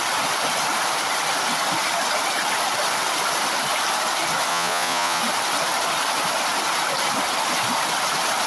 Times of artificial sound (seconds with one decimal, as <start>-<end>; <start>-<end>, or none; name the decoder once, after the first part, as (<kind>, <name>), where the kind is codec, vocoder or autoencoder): 4.5-5.2 (vocoder, Vocos)